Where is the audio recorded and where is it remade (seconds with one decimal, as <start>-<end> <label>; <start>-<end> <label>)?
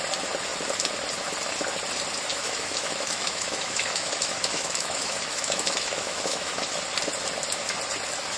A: 0.0-2.3 recorded; 2.3-6.6 remade; 6.6-8.4 recorded